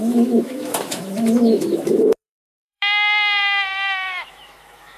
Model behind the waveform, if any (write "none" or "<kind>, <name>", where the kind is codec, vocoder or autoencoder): autoencoder, DAC-VAE